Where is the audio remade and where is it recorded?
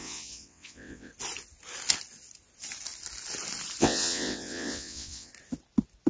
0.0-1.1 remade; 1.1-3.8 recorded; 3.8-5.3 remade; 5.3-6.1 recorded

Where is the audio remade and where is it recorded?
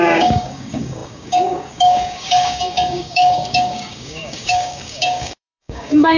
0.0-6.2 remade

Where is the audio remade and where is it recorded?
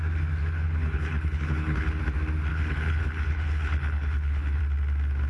0.0-0.4 recorded; 0.4-2.0 remade; 2.0-2.5 recorded; 2.5-4.6 remade; 4.6-5.3 recorded